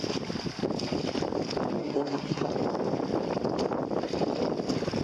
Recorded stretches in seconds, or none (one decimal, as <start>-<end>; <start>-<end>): 0.0-1.8; 2.5-5.0